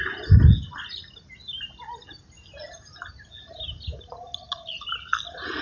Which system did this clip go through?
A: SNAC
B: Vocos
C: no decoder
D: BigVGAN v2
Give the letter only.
C